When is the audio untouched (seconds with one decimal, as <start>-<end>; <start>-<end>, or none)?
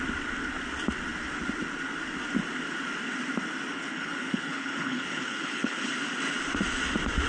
0.0-3.7; 5.9-7.3